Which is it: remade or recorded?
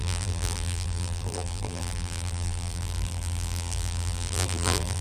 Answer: remade